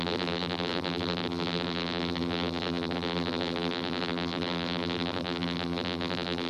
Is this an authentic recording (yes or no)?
no